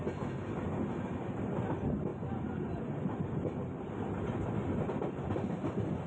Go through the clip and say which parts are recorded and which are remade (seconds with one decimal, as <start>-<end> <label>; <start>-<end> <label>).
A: 0.0-6.1 recorded